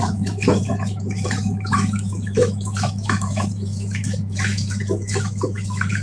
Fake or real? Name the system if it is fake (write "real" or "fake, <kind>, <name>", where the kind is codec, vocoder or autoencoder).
fake, autoencoder, DAC-VAE